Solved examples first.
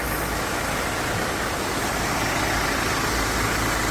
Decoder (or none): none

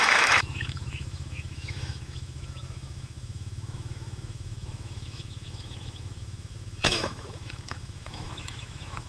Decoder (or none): autoencoder, DAC-VAE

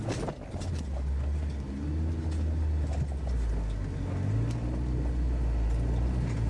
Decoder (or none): none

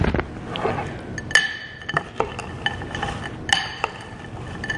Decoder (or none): none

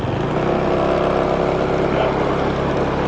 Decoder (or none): none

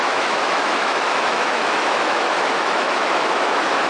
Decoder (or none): autoencoder, DAC-VAE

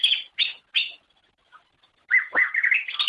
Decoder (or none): none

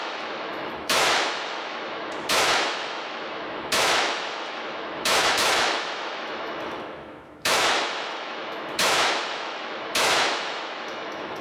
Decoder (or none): autoencoder, DAC-VAE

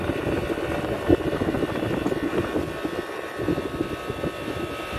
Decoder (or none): none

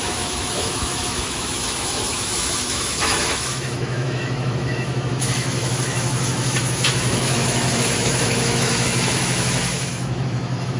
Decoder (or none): autoencoder, DAC-VAE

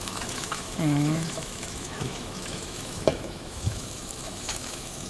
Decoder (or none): autoencoder, DAC-VAE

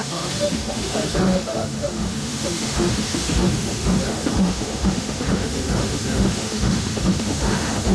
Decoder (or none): autoencoder, DAC-VAE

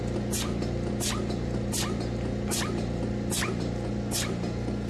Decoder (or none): none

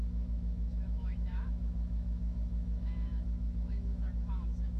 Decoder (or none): autoencoder, DAC-VAE